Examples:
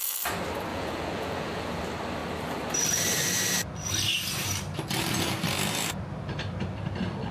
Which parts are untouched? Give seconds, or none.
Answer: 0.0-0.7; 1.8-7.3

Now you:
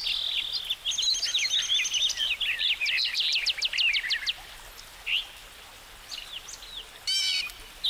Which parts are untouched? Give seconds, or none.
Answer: 0.0-7.9

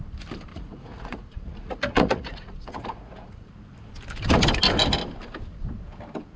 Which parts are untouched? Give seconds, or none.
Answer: 0.0-0.5; 3.5-6.4

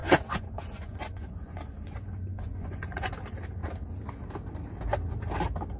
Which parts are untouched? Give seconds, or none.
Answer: 3.1-5.8

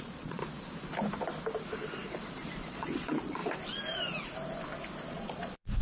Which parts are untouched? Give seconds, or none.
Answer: 0.4-2.7; 3.4-5.1

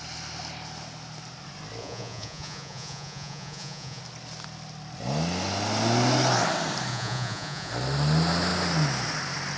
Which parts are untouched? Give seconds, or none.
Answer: 0.0-1.8; 4.0-6.9; 7.7-9.6